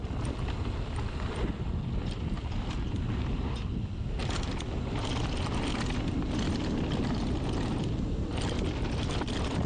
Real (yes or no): yes